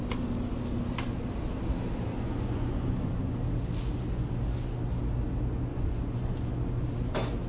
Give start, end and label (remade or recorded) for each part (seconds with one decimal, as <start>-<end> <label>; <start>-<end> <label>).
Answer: 0.0-2.1 recorded; 2.1-3.4 remade; 3.4-5.7 recorded; 5.7-6.5 remade; 6.5-7.5 recorded